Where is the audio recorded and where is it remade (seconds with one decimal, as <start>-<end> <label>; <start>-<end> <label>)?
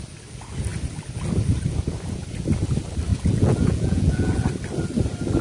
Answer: 0.0-3.1 recorded; 3.1-4.5 remade; 4.5-5.4 recorded